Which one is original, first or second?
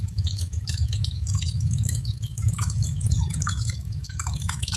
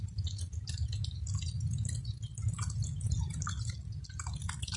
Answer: second